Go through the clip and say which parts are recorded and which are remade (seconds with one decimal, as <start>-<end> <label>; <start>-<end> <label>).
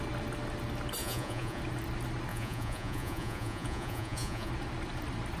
0.0-1.0 recorded; 1.0-1.6 remade; 1.6-2.3 recorded; 2.3-4.5 remade; 4.5-5.4 recorded